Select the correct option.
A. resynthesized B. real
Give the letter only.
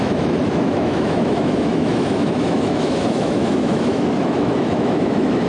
A